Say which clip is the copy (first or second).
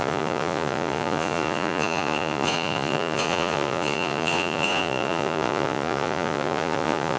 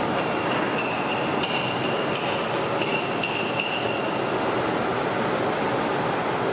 first